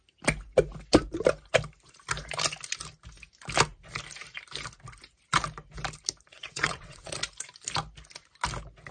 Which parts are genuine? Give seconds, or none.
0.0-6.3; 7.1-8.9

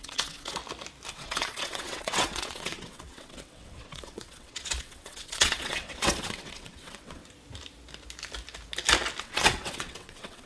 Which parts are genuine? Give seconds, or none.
0.6-1.1; 7.2-9.2

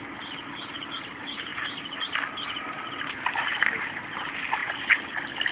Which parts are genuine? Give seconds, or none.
0.0-5.5

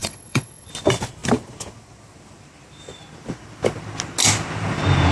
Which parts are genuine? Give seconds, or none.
0.7-5.1

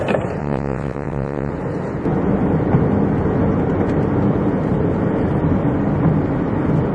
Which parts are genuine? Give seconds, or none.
0.0-0.4; 1.5-6.9

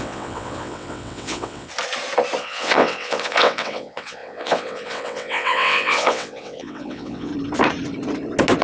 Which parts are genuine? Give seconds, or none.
1.7-2.4; 7.3-8.6

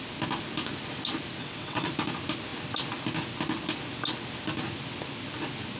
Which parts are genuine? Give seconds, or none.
0.0-1.4; 1.9-5.8

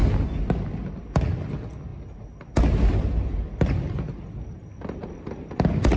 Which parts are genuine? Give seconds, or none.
0.0-6.0